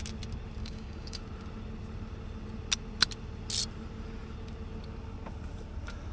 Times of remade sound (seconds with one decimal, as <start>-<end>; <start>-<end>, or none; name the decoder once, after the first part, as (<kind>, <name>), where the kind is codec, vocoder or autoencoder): 0.6-1.2 (codec, DAC)